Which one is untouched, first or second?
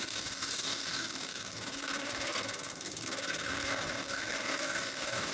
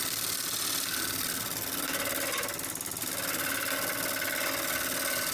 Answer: second